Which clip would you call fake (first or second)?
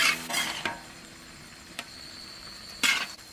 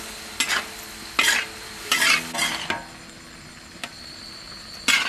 first